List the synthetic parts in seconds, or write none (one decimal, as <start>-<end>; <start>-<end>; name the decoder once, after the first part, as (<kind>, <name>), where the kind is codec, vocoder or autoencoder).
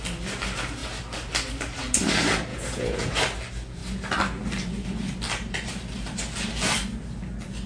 2.5-3.2 (vocoder, Vocos)